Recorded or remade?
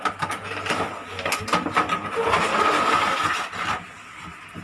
recorded